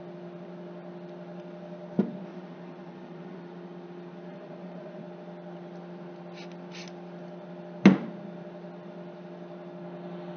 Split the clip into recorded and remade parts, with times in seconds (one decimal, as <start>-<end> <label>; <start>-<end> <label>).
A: 0.0-2.3 recorded; 2.3-3.4 remade; 3.4-4.3 recorded; 4.3-5.0 remade; 5.0-10.4 recorded